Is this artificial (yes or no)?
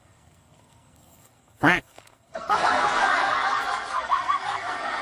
yes